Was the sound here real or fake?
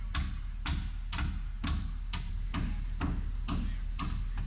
real